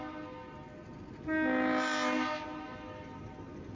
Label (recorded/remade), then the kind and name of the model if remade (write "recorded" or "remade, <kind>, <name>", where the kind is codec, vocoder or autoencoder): recorded